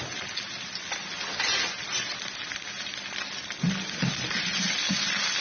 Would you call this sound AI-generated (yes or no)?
no